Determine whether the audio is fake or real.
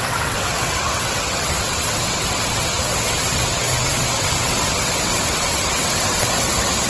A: fake